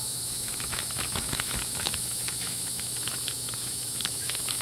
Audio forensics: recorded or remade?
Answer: remade